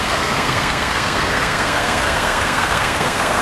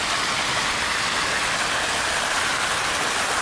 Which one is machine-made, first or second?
first